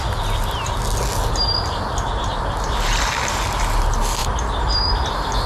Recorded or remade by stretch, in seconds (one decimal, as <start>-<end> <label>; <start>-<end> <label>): 0.0-4.2 recorded; 4.2-5.1 remade; 5.1-5.5 recorded